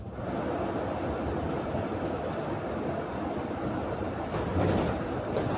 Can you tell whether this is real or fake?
real